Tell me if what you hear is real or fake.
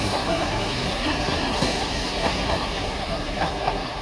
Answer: fake